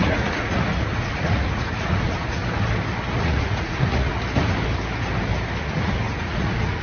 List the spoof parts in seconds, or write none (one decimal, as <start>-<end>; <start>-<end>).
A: 0.0-2.4; 3.2-4.1; 5.6-6.8